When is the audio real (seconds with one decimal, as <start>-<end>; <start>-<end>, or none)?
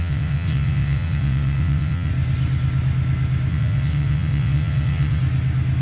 2.1-3.5; 5.2-5.8